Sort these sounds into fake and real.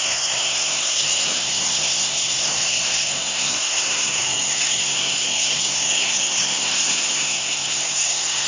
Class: fake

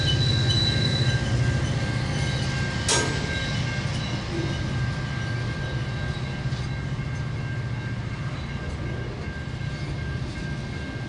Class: real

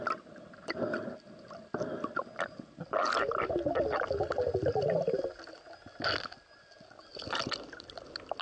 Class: real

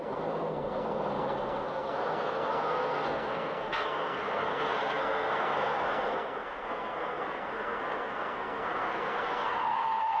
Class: fake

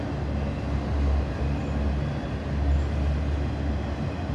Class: real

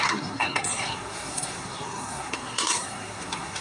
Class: fake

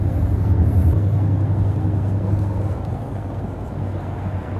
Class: fake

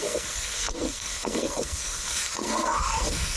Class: fake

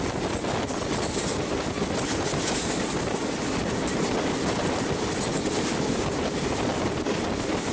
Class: real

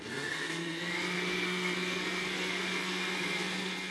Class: fake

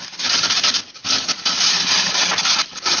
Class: real